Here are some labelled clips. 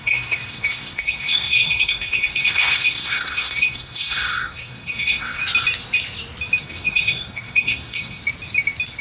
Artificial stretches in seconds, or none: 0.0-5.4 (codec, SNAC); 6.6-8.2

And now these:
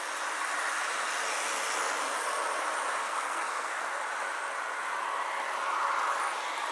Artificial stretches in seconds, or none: 3.0-4.0 (codec, SNAC)

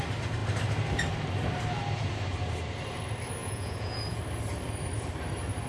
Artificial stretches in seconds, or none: 3.4-4.2 (vocoder, Vocos)

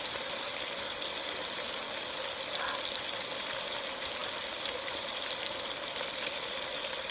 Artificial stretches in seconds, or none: none

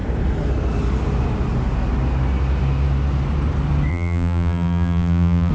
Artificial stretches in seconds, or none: 3.9-5.5 (vocoder, BigVGAN v2)

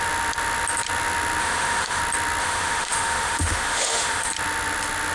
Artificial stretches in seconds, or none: 1.4-2.0 (autoencoder, DAC-VAE); 2.4-4.3

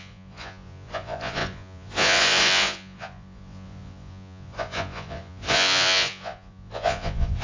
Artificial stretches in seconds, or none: 0.0-7.4 (vocoder, Vocos)

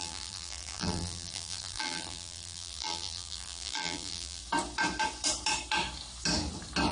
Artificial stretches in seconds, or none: 0.0-4.4 (vocoder, BigVGAN v2)